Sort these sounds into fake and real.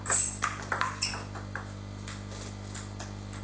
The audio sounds real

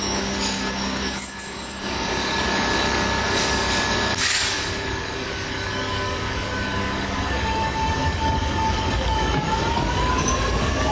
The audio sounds fake